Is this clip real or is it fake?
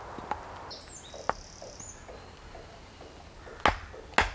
real